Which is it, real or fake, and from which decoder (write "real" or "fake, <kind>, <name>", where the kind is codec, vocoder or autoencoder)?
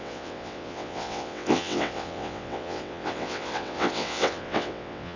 fake, vocoder, WaveNeXt